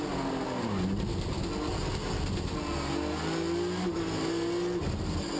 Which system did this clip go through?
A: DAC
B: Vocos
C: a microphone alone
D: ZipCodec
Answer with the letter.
C